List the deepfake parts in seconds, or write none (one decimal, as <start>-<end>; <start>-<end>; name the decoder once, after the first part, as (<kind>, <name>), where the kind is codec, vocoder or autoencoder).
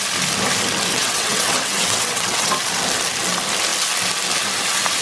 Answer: 0.9-2.5 (vocoder, WaveNeXt)